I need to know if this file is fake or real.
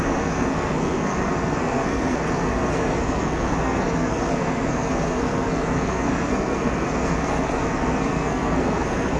fake